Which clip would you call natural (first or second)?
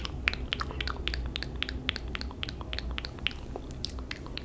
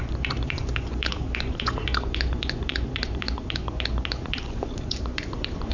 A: first